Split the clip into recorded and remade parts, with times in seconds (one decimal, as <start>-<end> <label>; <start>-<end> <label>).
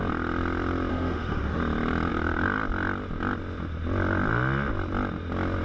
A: 0.0-0.9 recorded; 0.9-1.6 remade; 1.6-5.6 recorded